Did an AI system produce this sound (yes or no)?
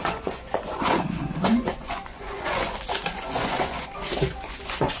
yes